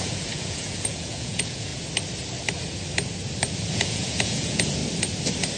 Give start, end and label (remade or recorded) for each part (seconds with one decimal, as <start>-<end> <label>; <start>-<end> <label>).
0.0-1.7 remade; 1.7-3.7 recorded; 3.7-4.8 remade; 4.8-5.6 recorded